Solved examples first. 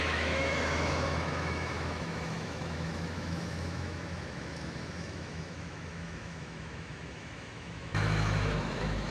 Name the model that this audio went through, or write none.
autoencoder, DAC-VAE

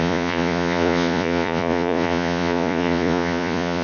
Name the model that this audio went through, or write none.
vocoder, Vocos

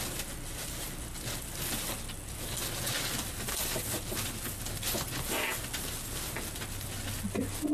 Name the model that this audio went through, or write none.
none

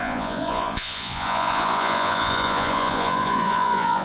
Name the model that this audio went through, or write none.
vocoder, Vocos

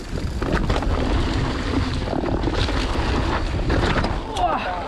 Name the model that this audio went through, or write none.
none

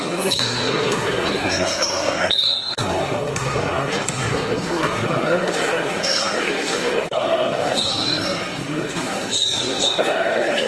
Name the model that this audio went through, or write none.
codec, SNAC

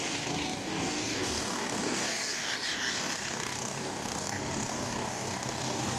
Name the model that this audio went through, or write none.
codec, DAC